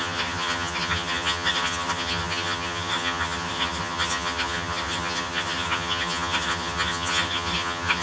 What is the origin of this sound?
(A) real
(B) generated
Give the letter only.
B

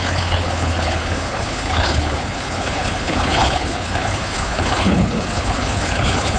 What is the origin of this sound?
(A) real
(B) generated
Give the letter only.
B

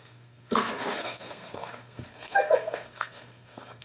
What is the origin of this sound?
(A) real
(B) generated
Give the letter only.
B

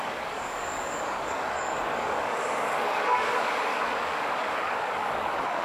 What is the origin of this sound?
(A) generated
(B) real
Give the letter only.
A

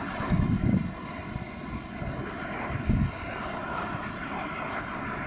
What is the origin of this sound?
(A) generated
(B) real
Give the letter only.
B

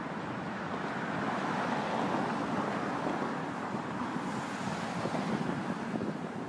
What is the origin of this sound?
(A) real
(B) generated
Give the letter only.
A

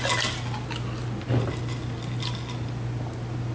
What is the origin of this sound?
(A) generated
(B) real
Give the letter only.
B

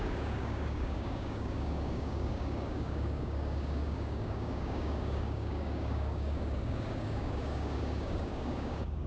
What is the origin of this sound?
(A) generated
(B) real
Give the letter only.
A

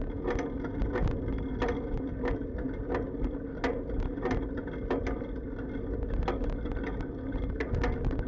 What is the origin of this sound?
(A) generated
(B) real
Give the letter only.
B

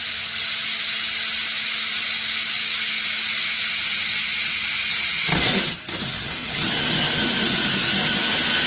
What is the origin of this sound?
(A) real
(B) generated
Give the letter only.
A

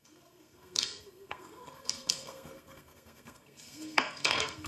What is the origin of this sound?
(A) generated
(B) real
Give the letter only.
A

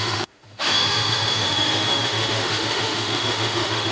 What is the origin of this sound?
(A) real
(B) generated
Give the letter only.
B